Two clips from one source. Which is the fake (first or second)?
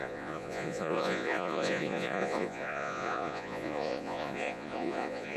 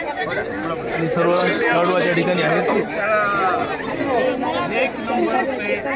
first